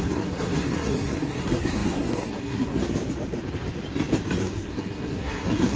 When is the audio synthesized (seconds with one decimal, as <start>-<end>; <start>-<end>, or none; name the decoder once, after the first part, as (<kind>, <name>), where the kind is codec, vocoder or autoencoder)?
0.0-2.8 (codec, SNAC); 4.4-5.8